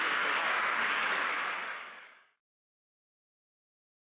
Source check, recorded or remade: remade